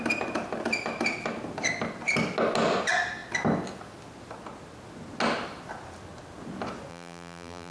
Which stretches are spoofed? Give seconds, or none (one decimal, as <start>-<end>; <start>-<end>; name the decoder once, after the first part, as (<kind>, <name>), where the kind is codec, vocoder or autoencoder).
6.9-7.7 (vocoder, BigVGAN v2)